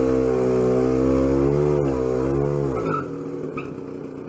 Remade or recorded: recorded